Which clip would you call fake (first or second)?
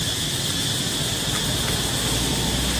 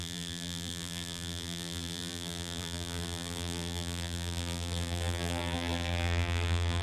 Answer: second